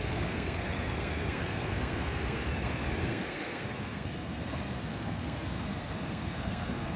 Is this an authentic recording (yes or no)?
no